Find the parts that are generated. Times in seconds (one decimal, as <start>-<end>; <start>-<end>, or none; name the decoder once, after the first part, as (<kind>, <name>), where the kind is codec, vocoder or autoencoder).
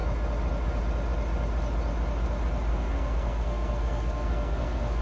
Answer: 2.7-5.0 (codec, SNAC)